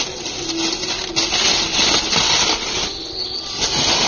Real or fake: real